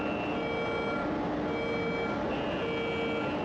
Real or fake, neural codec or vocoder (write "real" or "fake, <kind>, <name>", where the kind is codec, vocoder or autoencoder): real